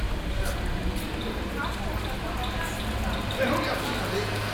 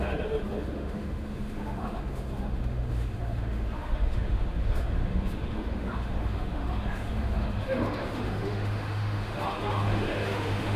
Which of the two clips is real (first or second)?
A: first